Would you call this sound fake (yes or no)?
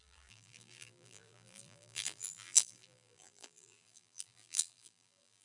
yes